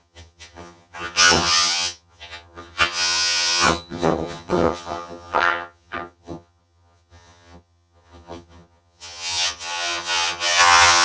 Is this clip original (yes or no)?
no